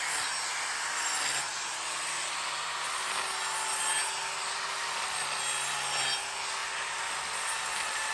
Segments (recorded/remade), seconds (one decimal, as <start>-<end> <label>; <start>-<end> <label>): 0.0-1.5 recorded; 1.5-2.6 remade; 2.6-6.6 recorded; 6.6-8.1 remade